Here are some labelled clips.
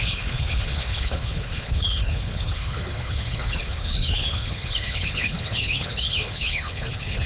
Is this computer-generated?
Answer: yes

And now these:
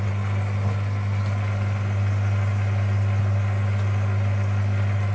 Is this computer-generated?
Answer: no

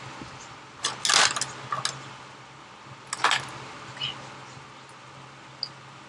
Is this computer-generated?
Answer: no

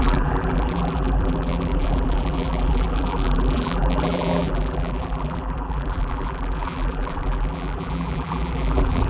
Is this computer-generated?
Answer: yes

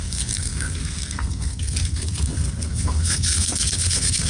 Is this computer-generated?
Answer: yes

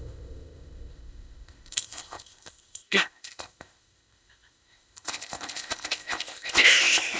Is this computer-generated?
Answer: yes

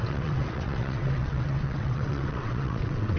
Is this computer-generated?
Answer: yes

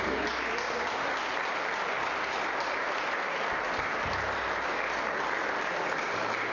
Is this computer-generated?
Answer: no